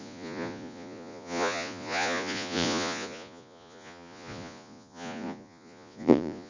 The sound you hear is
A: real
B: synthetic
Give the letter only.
B